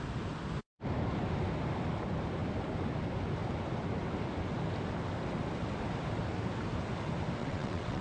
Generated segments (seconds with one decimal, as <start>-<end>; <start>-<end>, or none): 7.4-8.0